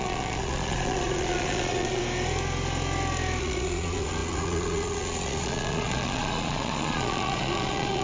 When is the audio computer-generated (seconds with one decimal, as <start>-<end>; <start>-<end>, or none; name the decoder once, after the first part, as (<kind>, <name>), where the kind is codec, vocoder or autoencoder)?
0.0-2.0 (vocoder, Vocos); 3.4-8.0